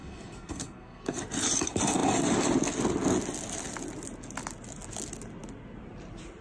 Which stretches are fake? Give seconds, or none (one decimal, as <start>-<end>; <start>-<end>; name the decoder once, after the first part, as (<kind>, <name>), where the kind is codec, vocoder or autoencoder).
0.0-1.2 (codec, SNAC)